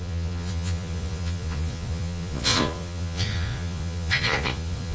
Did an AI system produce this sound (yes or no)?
yes